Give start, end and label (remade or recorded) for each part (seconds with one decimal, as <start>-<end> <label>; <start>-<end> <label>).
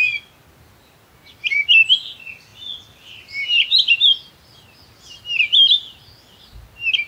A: 0.0-7.1 recorded